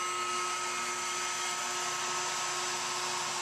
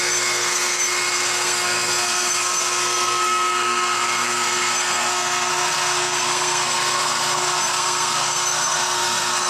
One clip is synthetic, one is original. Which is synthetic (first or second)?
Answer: second